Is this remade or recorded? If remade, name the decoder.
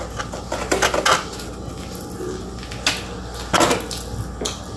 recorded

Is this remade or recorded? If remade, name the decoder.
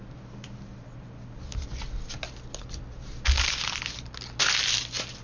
recorded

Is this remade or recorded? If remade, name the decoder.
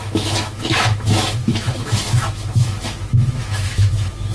remade, autoencoder, DAC-VAE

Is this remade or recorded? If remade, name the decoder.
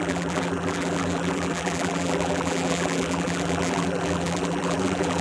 remade, vocoder, BigVGAN v2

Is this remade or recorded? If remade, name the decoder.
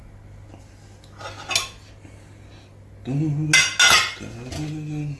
recorded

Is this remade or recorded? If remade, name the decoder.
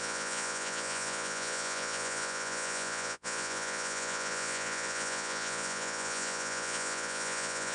remade, vocoder, Vocos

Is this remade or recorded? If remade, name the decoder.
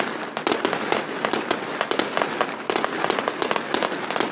recorded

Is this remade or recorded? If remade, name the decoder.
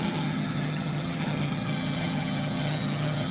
remade, vocoder, HiFi-GAN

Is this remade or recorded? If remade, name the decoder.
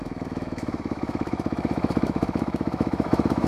remade, autoencoder, DAC-VAE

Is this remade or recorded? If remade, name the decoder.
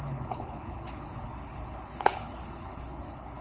remade, codec, HILCodec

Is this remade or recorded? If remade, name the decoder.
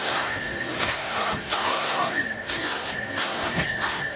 remade, codec, SNAC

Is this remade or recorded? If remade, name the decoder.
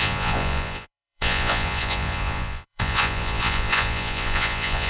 remade, vocoder, Vocos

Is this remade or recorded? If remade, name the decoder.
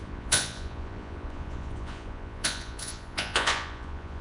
remade, vocoder, Vocos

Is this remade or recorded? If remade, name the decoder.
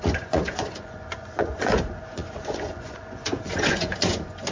remade, vocoder, Vocos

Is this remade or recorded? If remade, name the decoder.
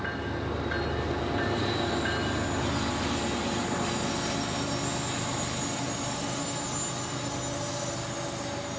recorded